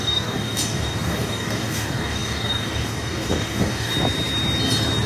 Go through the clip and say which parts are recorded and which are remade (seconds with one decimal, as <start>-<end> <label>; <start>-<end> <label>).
0.0-3.9 remade; 3.9-5.1 recorded